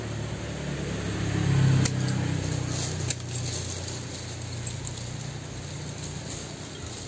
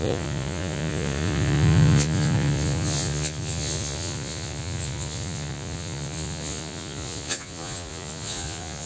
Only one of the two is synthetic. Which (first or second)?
second